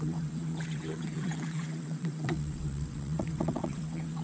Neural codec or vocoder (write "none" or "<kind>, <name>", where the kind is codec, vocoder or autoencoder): vocoder, WaveNeXt